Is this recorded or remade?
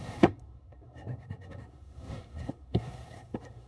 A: remade